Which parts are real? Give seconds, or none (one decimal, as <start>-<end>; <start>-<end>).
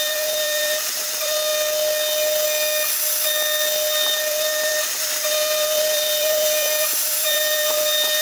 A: 1.5-4.1